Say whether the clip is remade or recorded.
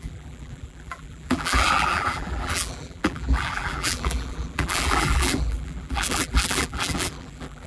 remade